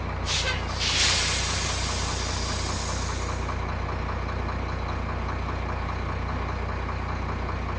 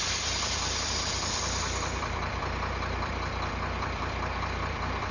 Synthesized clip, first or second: second